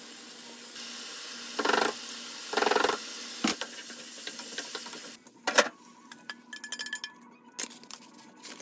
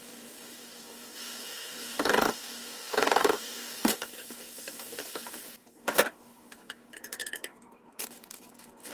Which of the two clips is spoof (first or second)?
second